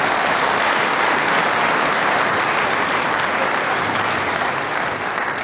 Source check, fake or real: real